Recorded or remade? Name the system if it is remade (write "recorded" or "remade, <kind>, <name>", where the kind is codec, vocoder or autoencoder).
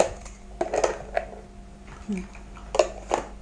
recorded